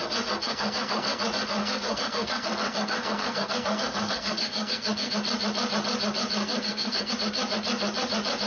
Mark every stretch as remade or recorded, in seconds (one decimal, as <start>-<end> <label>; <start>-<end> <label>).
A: 0.0-0.4 recorded; 0.4-1.2 remade; 1.2-1.6 recorded; 1.6-5.1 remade; 5.1-6.4 recorded; 6.4-7.1 remade; 7.1-8.5 recorded